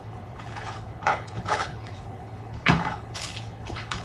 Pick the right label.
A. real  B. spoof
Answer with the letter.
B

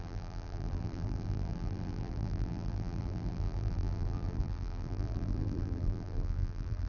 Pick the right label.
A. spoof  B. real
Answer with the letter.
A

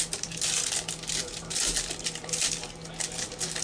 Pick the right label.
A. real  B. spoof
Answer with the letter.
A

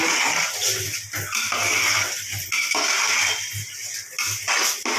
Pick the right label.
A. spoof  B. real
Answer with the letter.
B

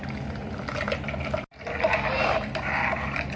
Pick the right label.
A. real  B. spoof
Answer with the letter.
A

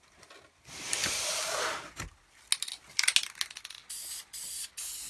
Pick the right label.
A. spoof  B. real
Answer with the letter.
B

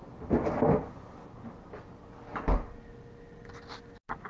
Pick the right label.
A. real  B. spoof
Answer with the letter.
A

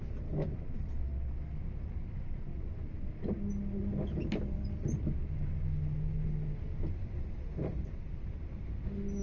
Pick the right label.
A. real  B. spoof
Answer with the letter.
A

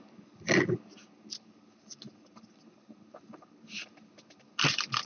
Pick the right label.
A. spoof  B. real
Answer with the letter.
B